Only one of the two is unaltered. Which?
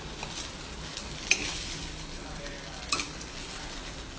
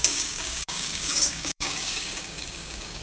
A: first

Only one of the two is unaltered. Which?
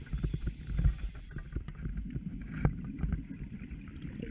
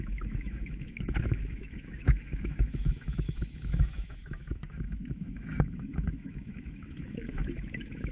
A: first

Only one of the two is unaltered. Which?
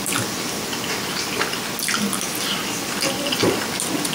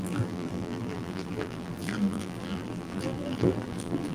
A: first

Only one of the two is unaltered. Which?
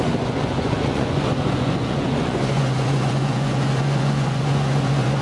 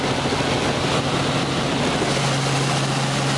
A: second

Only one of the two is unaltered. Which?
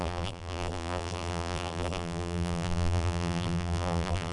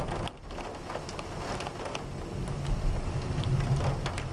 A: second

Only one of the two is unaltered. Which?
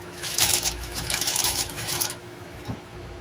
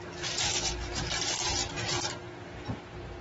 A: second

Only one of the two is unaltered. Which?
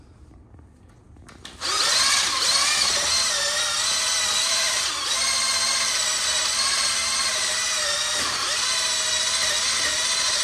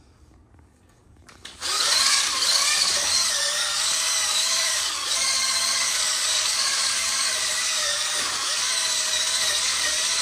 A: first